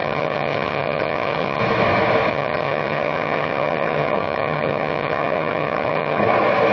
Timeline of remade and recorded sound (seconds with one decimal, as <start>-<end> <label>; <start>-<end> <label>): 0.0-1.6 remade; 1.6-2.3 recorded; 2.3-6.2 remade; 6.2-6.7 recorded